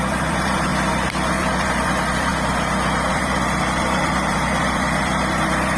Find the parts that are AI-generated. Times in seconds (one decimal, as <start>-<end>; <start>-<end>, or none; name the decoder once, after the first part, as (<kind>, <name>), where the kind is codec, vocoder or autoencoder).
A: 0.0-0.7 (vocoder, BigVGAN v2); 1.3-2.3; 3.1-5.8